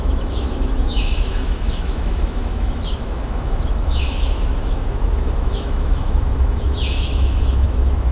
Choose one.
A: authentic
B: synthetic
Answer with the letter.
B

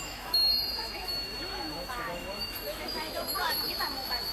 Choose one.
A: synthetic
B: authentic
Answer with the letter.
A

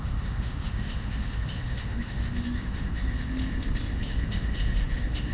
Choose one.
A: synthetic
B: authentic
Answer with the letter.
A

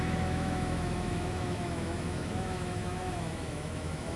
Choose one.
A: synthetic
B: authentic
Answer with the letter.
A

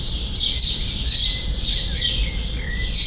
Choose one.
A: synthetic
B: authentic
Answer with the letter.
B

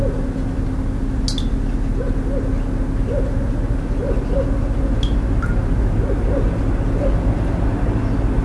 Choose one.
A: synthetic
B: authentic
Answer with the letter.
B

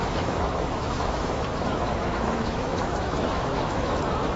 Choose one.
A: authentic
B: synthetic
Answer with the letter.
B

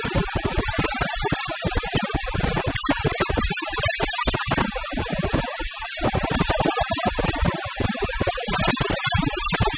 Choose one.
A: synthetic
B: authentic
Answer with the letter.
B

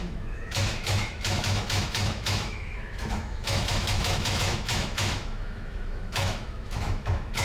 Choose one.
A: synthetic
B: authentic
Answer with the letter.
A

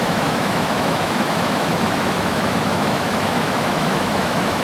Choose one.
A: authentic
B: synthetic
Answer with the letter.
B